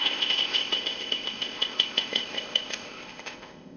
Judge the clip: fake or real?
fake